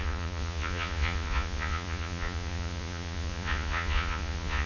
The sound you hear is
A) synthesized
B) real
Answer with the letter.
A